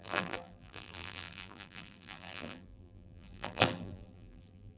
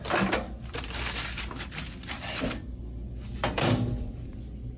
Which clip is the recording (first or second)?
second